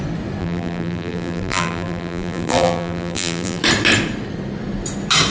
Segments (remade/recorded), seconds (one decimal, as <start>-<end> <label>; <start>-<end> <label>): 0.0-0.4 recorded; 0.4-3.6 remade; 3.6-5.3 recorded